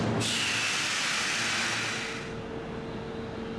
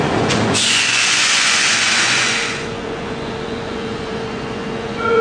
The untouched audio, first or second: first